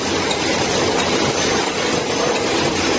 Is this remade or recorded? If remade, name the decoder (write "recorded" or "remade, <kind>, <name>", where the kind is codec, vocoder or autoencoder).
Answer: recorded